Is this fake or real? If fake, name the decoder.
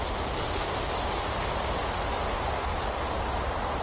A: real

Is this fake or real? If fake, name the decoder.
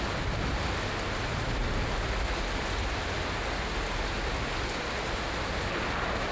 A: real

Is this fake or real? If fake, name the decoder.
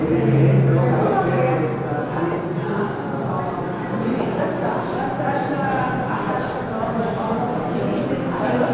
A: real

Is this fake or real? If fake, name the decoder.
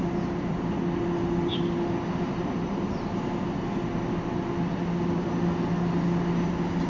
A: real